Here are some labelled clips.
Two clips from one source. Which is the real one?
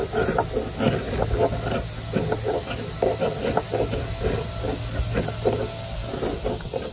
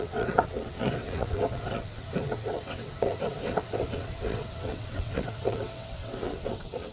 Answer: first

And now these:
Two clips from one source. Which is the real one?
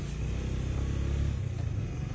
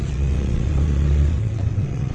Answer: first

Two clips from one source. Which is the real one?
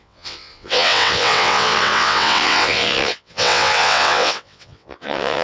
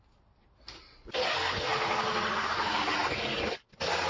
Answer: second